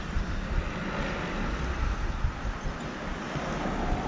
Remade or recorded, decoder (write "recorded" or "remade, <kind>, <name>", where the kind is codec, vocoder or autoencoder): recorded